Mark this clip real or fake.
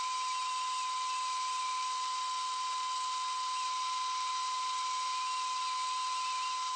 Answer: real